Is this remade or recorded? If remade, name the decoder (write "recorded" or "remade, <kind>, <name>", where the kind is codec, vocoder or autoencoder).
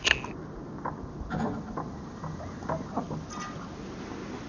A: recorded